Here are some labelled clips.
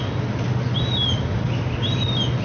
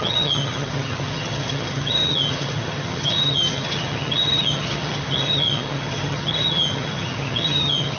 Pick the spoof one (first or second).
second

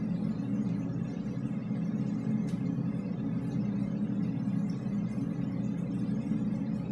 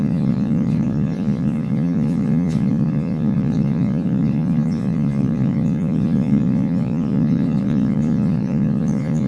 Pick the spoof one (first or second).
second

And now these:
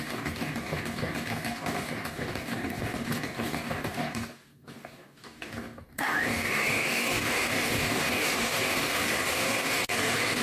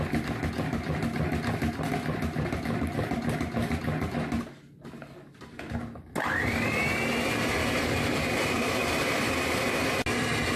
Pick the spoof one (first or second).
first